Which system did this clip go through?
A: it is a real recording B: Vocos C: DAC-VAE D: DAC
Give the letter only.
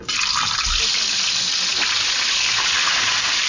A